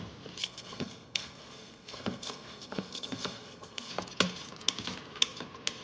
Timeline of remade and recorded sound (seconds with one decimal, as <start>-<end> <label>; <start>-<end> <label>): 0.0-0.4 recorded; 0.4-3.9 remade; 3.9-5.8 recorded